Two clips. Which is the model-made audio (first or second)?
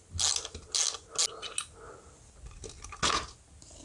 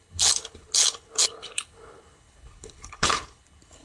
second